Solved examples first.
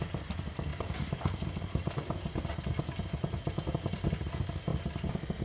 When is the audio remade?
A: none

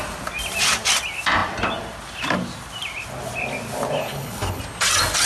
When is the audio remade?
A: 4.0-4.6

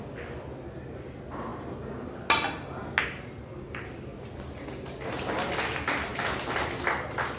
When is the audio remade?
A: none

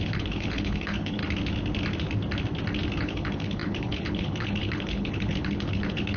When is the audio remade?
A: 0.0-1.2; 3.0-6.2

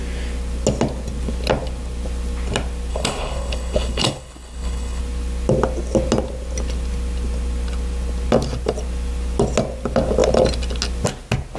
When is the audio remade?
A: 2.9-5.0